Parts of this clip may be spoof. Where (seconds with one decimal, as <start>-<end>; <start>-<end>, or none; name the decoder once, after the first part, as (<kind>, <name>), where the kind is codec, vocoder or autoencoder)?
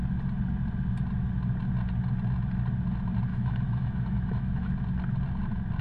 3.3-4.7 (autoencoder, DAC-VAE)